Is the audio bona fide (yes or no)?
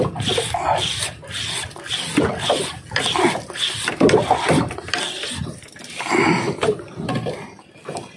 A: yes